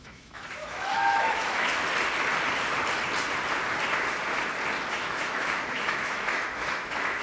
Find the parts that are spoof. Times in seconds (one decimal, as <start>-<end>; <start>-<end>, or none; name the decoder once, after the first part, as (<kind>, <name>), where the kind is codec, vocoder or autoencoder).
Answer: 0.0-1.7 (autoencoder, DAC-VAE); 4.9-7.2